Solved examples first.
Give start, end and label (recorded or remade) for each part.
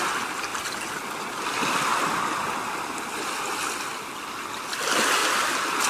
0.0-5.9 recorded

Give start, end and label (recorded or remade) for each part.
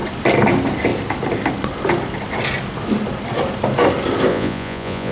0.0-4.3 recorded; 4.3-5.1 remade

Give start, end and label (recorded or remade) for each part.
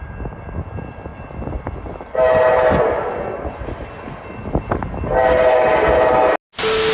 0.0-6.9 recorded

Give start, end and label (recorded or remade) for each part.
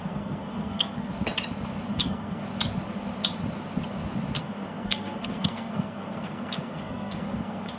0.0-1.1 remade; 1.1-1.9 recorded; 1.9-2.4 remade; 2.4-4.4 recorded; 4.4-7.8 remade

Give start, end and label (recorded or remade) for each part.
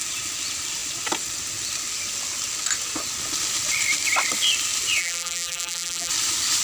0.0-5.0 recorded; 5.0-6.1 remade; 6.1-6.6 recorded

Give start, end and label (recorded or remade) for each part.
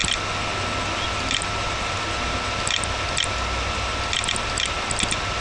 0.0-5.4 recorded